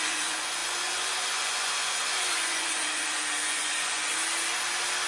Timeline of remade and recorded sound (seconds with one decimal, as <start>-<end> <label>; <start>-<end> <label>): 0.0-4.1 remade; 4.1-5.1 recorded